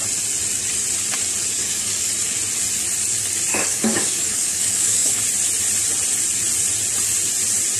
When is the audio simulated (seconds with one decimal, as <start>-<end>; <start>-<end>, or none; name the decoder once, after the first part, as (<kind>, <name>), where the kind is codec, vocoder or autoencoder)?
1.6-2.1 (codec, DAC); 3.5-5.2